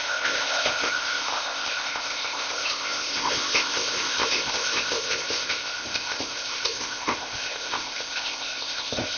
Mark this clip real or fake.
fake